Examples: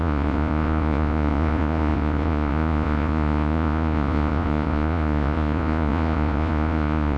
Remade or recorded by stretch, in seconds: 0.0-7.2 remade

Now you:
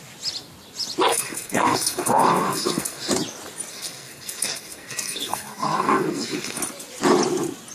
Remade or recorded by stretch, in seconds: 0.0-1.1 recorded; 1.1-3.1 remade; 3.1-3.7 recorded; 3.7-6.6 remade; 6.6-7.7 recorded